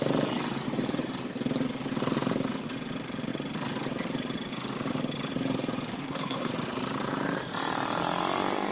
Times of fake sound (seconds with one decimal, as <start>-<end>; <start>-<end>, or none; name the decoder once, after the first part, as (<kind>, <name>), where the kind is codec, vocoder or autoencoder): 6.0-6.5 (codec, SNAC)